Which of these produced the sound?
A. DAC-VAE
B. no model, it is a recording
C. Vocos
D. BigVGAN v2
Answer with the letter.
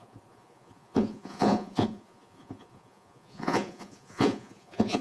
C